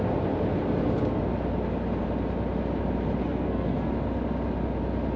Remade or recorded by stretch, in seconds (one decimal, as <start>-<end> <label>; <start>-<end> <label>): 0.0-3.2 recorded; 3.2-3.9 remade; 3.9-5.2 recorded